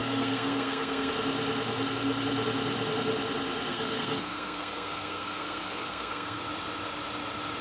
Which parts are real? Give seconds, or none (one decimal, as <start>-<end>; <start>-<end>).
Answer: 1.1-3.7; 6.4-7.6